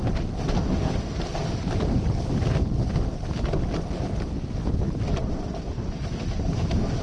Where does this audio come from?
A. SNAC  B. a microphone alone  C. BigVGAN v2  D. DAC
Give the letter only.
B